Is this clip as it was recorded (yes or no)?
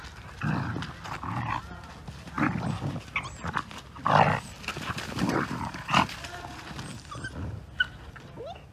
yes